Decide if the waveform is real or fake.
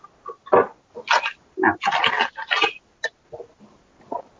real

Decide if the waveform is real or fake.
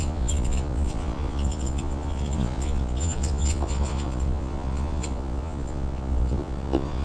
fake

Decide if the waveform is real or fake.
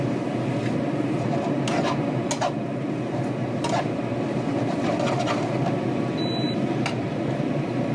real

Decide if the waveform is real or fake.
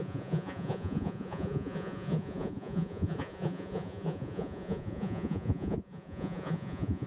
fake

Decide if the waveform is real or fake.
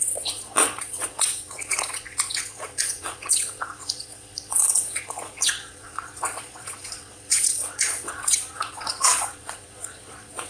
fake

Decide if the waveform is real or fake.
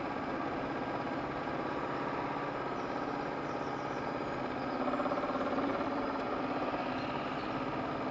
real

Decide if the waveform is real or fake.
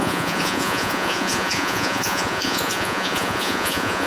fake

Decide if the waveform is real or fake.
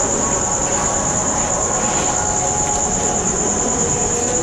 real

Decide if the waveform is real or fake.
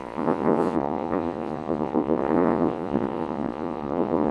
fake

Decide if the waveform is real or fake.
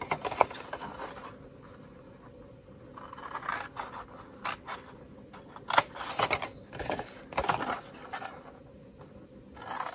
real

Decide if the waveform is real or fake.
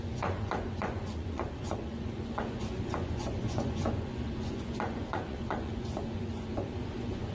fake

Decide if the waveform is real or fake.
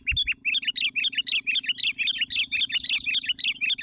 real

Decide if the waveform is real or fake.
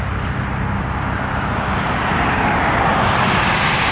real